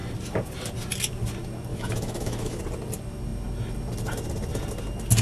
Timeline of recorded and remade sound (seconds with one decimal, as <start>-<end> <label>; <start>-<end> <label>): 0.0-1.7 recorded; 1.7-2.6 remade; 2.6-5.2 recorded